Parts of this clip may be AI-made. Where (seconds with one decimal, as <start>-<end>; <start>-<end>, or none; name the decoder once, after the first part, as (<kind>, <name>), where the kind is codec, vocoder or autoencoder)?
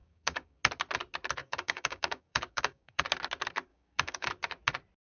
0.0-0.6 (codec, DAC); 1.4-3.0; 3.7-4.3